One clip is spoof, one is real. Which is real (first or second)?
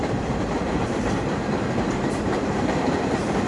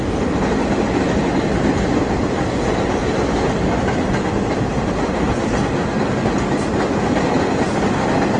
second